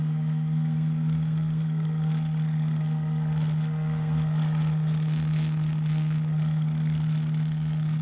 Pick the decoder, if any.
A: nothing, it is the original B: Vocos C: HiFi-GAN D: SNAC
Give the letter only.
D